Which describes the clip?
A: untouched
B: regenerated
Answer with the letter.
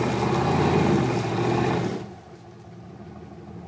A